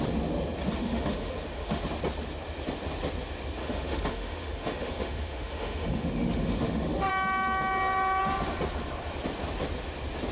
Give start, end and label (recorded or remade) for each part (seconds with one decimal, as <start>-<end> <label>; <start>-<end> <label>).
0.0-0.8 recorded; 0.8-1.8 remade; 1.8-3.6 recorded; 3.6-7.1 remade; 7.1-10.3 recorded